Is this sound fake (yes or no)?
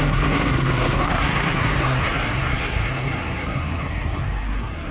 yes